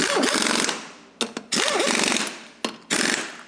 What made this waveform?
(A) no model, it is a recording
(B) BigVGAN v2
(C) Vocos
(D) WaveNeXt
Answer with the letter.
A